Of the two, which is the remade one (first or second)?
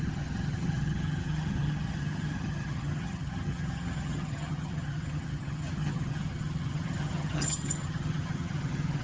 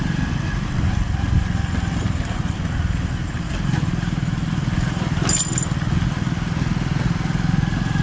first